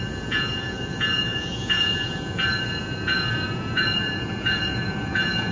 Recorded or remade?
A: remade